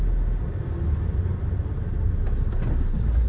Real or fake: real